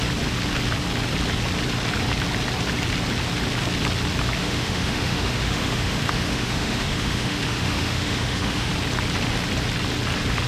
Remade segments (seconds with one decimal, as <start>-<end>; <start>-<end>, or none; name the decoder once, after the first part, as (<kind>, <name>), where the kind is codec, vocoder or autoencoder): 4.4-8.7 (autoencoder, DAC-VAE)